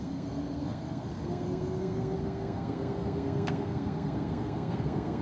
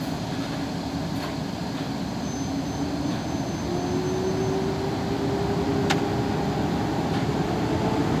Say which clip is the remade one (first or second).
first